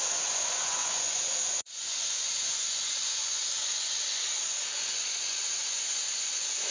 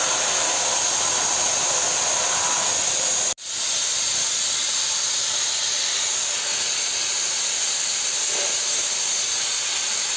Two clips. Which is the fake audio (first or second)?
first